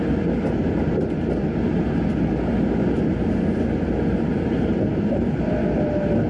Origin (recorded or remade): recorded